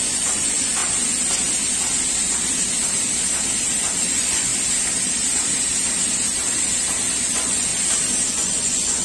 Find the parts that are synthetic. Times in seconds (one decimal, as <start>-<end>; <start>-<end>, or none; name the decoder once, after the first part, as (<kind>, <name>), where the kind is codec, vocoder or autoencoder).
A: 0.0-0.8 (vocoder, Vocos); 4.0-4.5; 7.3-7.7; 8.3-9.0